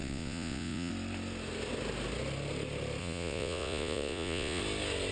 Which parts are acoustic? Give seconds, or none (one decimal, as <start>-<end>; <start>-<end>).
0.9-3.0; 4.6-5.1